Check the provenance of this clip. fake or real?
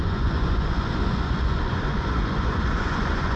fake